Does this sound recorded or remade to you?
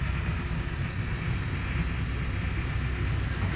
recorded